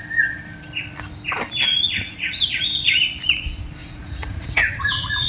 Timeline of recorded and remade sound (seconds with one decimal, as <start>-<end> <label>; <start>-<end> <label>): 0.0-1.7 recorded; 1.7-2.5 remade; 2.5-3.8 recorded; 3.8-5.3 remade